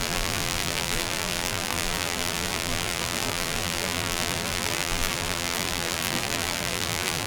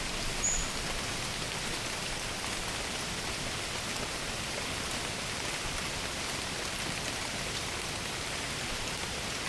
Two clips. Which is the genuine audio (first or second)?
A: second